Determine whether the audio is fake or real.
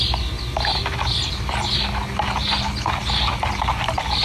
real